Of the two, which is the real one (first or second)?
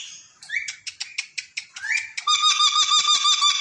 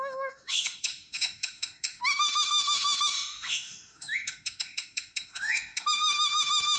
first